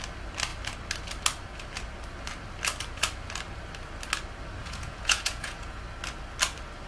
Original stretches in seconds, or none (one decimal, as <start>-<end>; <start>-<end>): 0.0-4.6; 5.8-6.9